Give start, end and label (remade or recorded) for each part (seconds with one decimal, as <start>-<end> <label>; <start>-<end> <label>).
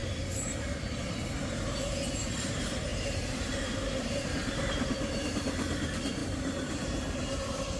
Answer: 0.0-0.7 remade; 0.7-2.9 recorded; 2.9-4.9 remade; 4.9-6.2 recorded; 6.2-7.8 remade